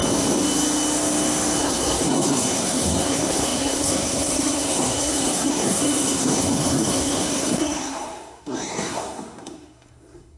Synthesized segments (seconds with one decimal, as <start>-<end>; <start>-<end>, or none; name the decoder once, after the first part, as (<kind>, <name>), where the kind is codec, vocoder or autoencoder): 1.6-10.4 (codec, SNAC)